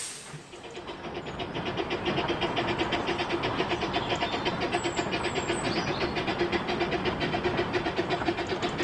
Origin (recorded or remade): recorded